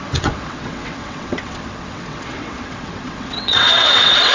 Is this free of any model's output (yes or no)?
no